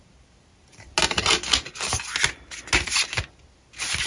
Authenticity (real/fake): real